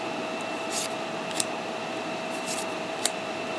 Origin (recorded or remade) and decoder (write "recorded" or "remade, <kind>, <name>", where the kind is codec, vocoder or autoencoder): remade, vocoder, BigVGAN v2